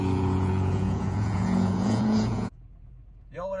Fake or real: fake